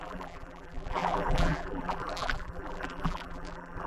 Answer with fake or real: fake